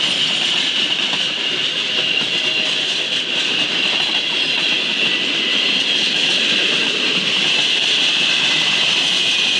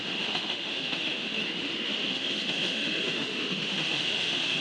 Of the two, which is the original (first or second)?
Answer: first